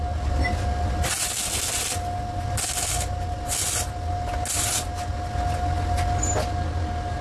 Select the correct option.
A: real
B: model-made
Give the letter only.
A